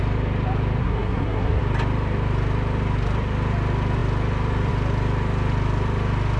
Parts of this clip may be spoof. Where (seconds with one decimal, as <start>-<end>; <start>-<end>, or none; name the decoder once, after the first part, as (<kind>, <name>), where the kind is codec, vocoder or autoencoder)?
0.8-1.6 (codec, SNAC)